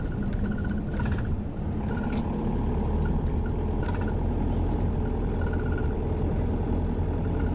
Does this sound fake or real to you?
real